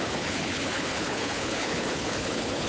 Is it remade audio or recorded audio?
remade